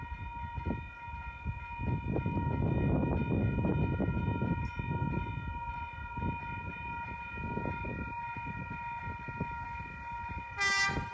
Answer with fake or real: real